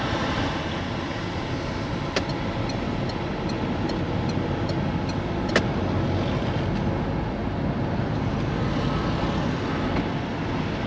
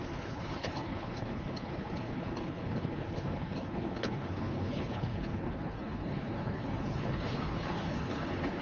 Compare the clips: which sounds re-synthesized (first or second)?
second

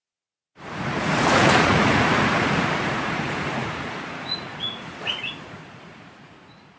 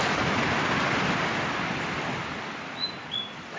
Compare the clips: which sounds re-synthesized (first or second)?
first